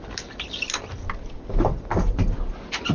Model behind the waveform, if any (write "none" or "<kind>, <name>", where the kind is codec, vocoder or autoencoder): none